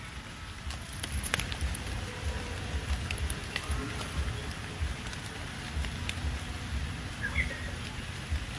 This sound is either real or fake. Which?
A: real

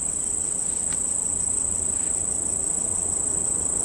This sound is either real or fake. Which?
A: fake